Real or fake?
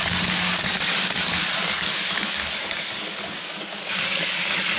fake